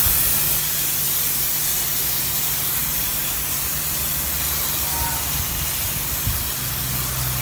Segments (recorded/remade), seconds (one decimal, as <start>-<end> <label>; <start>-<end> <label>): 0.0-2.8 recorded; 2.8-3.3 remade; 3.3-7.4 recorded